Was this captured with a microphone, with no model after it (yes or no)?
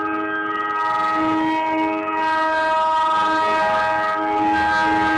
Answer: yes